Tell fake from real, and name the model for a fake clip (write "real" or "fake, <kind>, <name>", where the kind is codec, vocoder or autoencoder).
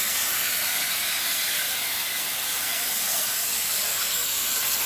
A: fake, codec, SNAC